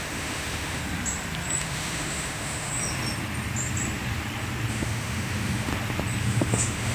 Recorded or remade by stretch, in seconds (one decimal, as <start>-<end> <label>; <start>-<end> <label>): 0.0-0.8 remade; 0.8-1.6 recorded; 1.6-2.7 remade; 2.7-4.7 recorded; 4.7-5.7 remade; 5.7-6.2 recorded; 6.2-6.9 remade